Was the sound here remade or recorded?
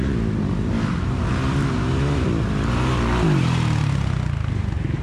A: recorded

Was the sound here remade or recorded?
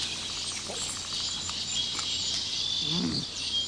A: recorded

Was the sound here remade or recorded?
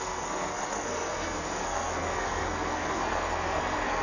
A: remade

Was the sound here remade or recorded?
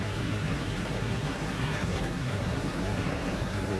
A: remade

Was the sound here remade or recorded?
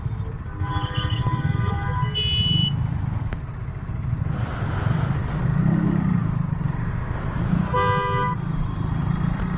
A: recorded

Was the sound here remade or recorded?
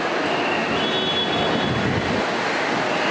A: recorded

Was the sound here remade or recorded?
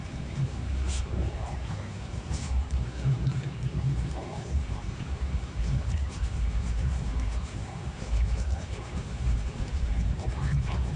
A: remade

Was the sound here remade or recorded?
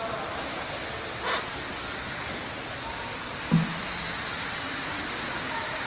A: recorded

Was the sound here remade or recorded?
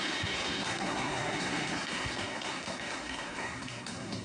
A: remade